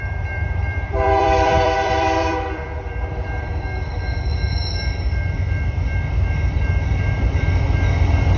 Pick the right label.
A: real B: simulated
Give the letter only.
B